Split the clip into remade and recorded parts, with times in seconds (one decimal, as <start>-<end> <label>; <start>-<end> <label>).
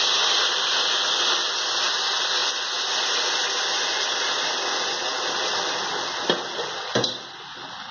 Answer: 0.0-7.9 recorded